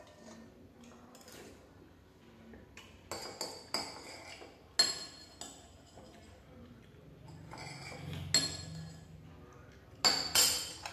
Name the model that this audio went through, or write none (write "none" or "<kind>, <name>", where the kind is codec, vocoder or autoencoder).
none